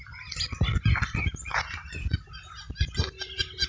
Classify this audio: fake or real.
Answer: real